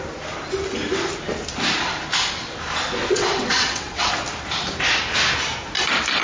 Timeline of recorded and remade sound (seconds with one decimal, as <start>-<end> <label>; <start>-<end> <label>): 0.0-3.0 recorded; 3.0-4.1 remade; 4.1-6.2 recorded